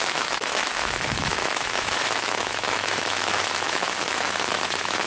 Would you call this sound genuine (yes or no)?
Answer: no